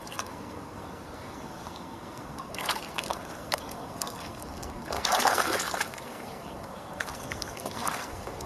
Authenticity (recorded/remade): remade